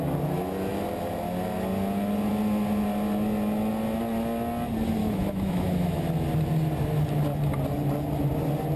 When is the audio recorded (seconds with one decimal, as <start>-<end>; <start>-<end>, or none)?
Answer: 0.0-5.0; 6.0-8.8